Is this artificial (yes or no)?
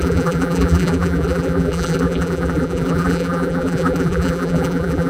yes